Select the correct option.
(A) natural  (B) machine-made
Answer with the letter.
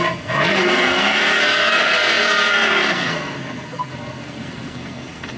B